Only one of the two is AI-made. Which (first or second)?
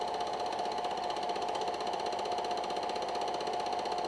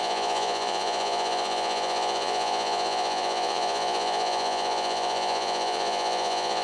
second